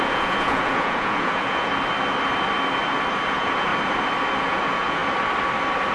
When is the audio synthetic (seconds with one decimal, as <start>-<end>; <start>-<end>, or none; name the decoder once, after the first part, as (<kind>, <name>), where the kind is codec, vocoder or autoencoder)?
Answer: 0.0-1.7 (vocoder, Vocos); 3.3-3.7; 4.4-5.0